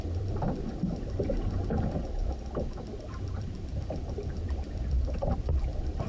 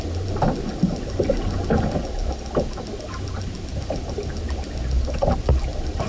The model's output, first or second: first